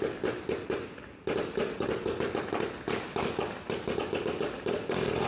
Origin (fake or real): real